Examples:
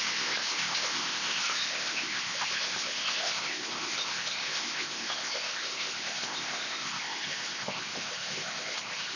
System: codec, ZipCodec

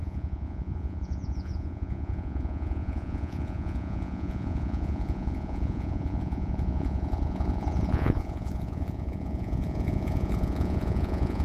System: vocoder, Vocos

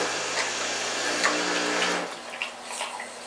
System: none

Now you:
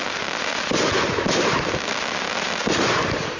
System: none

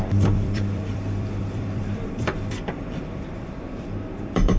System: vocoder, BigVGAN v2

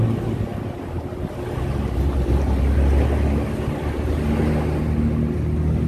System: none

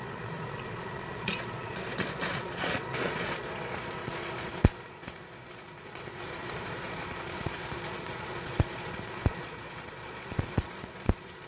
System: vocoder, Vocos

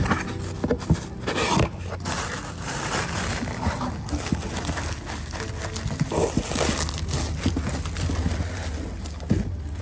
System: none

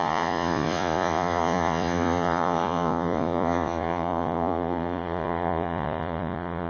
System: vocoder, Vocos